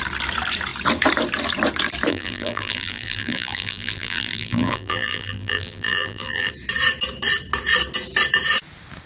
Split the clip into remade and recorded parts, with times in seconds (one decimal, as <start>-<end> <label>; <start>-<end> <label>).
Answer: 0.0-2.1 recorded; 2.1-6.5 remade; 6.5-9.1 recorded